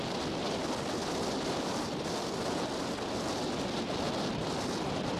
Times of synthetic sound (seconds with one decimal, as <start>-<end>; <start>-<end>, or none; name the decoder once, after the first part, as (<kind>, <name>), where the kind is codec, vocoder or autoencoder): none

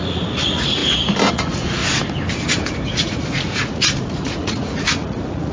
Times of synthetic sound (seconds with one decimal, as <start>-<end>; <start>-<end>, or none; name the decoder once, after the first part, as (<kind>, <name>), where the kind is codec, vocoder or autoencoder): 0.0-0.8 (vocoder, Vocos); 1.3-1.8; 2.9-5.5

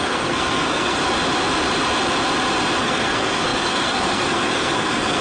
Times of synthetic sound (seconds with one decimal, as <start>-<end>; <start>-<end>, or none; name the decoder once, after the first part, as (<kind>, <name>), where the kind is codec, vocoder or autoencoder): 0.0-1.0 (codec, SNAC); 2.8-5.2

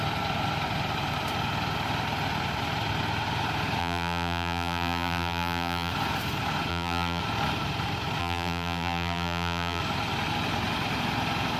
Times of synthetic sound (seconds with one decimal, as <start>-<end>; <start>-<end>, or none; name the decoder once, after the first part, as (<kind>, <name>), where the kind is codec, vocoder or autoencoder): 3.8-5.9 (vocoder, BigVGAN v2); 6.7-7.2; 8.2-9.8

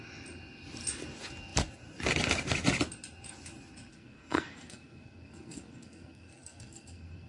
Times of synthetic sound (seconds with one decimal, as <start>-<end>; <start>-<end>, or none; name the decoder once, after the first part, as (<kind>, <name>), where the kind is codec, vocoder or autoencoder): 3.9-7.3 (codec, SNAC)

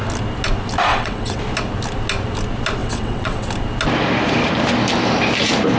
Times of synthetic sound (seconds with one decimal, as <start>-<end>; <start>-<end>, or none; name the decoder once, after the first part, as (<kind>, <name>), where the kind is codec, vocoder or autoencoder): 0.9-1.4 (vocoder, WaveNeXt); 2.8-3.5